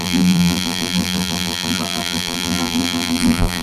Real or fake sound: fake